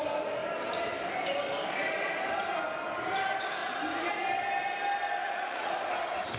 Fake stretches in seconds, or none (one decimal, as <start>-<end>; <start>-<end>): 5.2-5.7